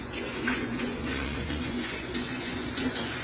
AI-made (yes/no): yes